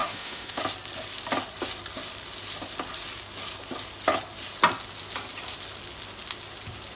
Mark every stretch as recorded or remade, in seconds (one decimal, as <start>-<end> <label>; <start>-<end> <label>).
0.0-0.6 remade; 0.6-6.9 recorded